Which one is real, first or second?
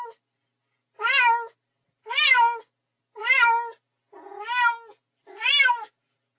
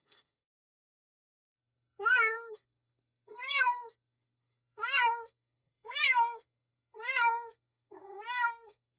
first